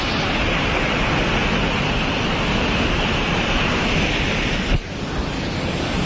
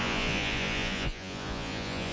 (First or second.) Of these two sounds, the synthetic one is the second